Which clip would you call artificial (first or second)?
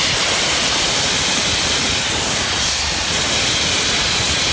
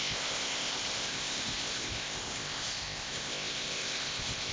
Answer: second